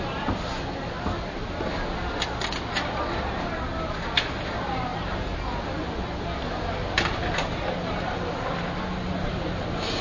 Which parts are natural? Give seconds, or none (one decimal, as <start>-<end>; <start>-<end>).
0.0-10.0

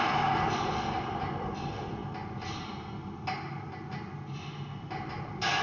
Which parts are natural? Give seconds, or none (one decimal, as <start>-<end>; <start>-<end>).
0.0-5.6

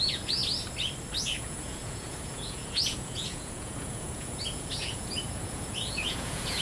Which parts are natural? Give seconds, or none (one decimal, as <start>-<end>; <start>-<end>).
0.4-1.2

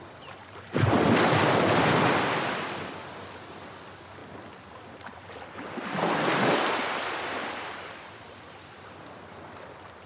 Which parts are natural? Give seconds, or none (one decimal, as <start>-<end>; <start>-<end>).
0.0-10.1

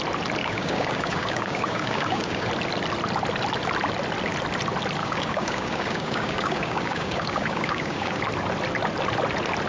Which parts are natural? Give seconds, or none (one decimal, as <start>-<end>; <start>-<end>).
0.0-0.4; 2.5-5.0; 8.2-9.7

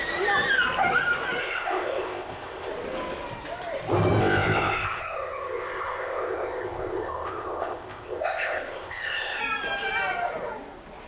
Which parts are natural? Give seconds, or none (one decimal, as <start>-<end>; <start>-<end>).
0.0-1.4; 2.7-4.2; 9.4-11.1

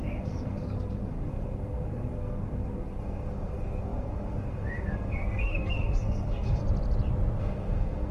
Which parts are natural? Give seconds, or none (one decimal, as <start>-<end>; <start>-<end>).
6.6-7.4

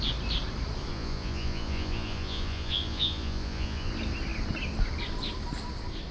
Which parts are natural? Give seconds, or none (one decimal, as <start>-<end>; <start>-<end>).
0.0-0.9; 3.9-6.1